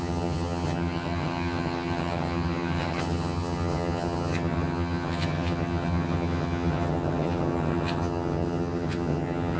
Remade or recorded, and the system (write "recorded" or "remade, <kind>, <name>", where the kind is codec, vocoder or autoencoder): remade, vocoder, HiFi-GAN